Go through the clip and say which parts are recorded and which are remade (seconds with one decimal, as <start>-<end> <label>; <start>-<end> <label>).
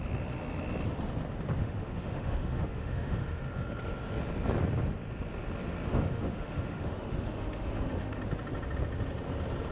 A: 0.0-1.6 recorded; 1.6-3.4 remade; 3.4-5.9 recorded; 5.9-8.2 remade; 8.2-9.7 recorded